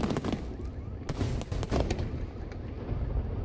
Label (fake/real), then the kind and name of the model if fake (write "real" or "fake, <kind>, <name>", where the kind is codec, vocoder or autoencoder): real